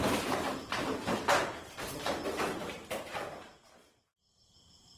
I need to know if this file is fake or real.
fake